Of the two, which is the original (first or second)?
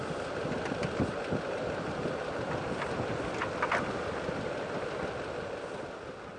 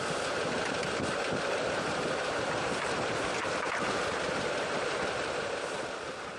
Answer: first